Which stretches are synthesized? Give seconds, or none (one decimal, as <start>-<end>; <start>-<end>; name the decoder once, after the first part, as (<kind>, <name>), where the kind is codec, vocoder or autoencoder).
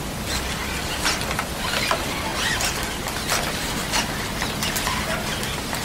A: none